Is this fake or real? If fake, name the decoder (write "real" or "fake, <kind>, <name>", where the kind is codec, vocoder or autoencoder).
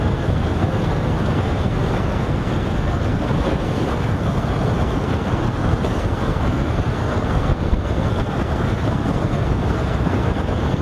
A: fake, codec, SNAC